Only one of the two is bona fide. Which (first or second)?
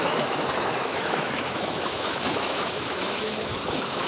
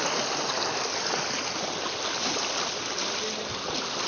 second